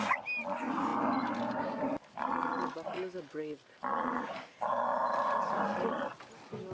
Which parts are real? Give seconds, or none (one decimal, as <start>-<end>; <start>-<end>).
0.0-6.7